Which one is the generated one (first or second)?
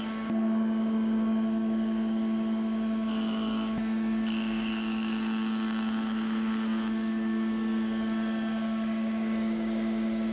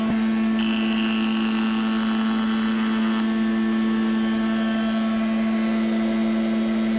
first